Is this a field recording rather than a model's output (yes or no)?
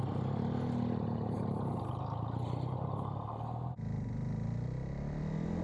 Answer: yes